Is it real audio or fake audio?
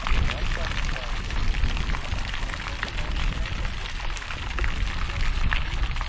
real